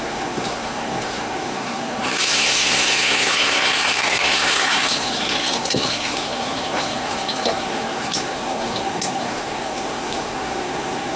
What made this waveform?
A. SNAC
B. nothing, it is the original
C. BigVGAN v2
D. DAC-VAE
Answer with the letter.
A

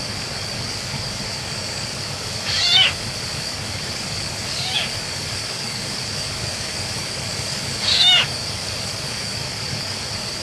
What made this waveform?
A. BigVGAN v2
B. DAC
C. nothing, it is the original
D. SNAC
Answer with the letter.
B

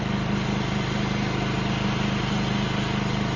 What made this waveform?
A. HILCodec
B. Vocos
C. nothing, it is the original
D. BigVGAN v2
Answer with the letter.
C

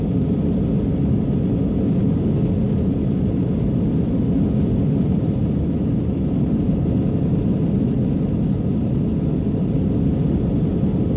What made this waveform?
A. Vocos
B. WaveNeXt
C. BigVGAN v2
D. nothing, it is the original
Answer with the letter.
D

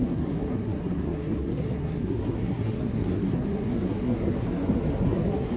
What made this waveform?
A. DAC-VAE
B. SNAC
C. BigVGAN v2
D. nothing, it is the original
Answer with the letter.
B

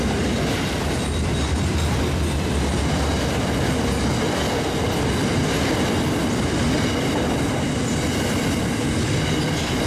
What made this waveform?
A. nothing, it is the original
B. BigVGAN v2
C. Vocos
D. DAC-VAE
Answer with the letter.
A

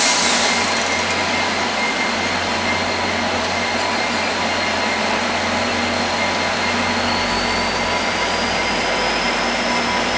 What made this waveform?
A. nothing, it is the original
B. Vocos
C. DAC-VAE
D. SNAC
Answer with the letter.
A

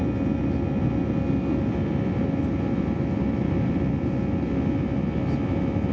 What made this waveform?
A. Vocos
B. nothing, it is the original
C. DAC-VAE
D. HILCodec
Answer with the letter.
B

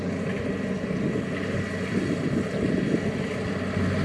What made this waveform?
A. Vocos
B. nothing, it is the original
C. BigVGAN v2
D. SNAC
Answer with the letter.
B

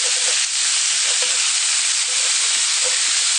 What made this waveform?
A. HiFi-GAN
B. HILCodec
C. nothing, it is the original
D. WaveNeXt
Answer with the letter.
C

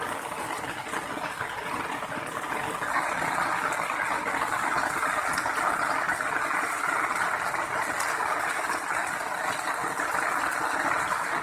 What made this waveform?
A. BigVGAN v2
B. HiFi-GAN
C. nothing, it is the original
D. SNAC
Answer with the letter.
C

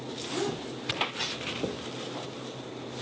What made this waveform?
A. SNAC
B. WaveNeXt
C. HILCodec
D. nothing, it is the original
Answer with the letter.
D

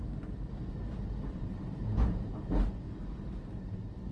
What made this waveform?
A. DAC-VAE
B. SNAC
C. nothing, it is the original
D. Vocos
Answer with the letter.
C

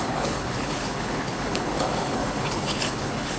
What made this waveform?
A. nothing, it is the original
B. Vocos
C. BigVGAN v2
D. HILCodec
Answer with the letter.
D